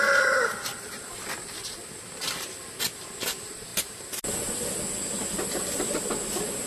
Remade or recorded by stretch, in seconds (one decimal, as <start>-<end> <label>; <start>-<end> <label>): 0.0-6.7 recorded